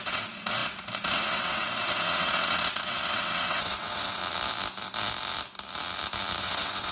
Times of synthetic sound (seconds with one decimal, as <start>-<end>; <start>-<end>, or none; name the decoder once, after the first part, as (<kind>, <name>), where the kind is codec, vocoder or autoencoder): 0.0-4.2 (vocoder, WaveNeXt); 6.4-6.9

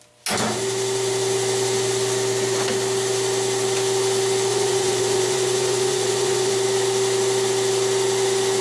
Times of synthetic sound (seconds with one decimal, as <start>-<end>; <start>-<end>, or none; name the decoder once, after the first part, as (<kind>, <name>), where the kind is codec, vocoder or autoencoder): 4.5-6.5 (vocoder, Vocos)

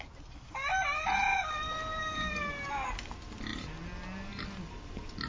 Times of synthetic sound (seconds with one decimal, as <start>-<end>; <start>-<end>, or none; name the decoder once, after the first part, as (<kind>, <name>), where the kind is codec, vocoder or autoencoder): none